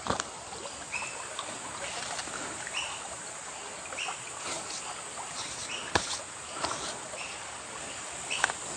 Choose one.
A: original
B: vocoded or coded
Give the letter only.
A